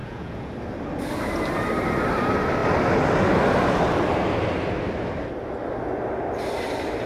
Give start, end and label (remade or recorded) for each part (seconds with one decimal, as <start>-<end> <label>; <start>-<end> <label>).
0.0-0.5 remade; 0.5-7.1 recorded